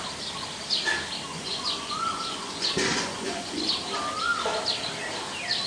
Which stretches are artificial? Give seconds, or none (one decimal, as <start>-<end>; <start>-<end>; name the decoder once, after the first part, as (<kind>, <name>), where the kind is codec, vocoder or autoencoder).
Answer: 1.3-3.7 (vocoder, Vocos)